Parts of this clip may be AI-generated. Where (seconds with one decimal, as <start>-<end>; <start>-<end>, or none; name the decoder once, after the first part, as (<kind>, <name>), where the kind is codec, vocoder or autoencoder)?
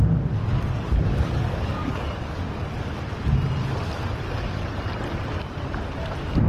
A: 0.4-2.8 (codec, DAC)